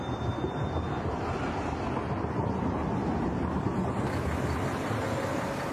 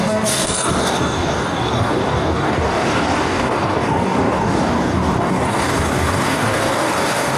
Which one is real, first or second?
first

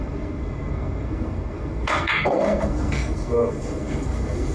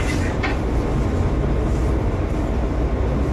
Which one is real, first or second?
second